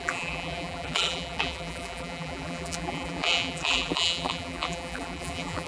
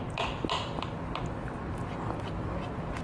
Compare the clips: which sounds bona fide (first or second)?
second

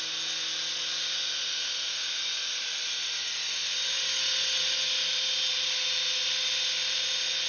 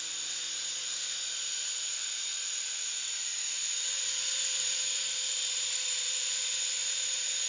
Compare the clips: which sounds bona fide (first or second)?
first